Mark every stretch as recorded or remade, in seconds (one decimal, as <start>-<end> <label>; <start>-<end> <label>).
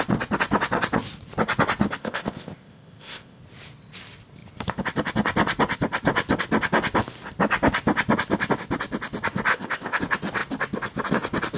0.0-2.0 recorded; 2.0-3.4 remade; 3.4-9.5 recorded; 9.5-10.0 remade; 10.0-11.6 recorded